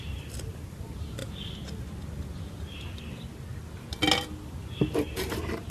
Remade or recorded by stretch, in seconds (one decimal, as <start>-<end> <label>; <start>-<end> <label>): 0.0-5.7 recorded